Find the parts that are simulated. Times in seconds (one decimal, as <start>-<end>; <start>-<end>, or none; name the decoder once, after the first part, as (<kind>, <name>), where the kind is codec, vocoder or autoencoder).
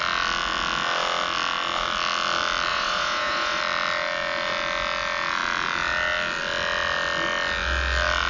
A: 2.7-3.6 (vocoder, Vocos)